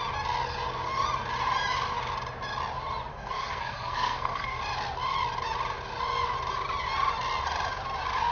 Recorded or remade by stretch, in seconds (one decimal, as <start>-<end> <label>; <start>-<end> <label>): 0.0-3.1 recorded; 3.1-4.6 remade; 4.6-8.3 recorded